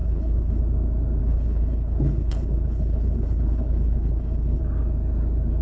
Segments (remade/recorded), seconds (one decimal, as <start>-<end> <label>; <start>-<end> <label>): 0.0-0.6 remade; 0.6-1.2 recorded; 1.2-4.6 remade; 4.6-5.6 recorded